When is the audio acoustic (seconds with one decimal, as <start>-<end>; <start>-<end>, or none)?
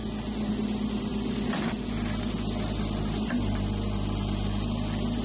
0.0-1.1; 1.7-5.2